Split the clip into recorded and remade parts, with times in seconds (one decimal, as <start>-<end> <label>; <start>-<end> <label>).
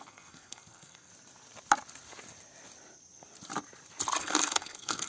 0.0-1.1 remade; 1.1-4.2 recorded; 4.2-5.1 remade